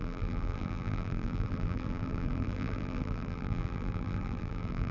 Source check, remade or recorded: remade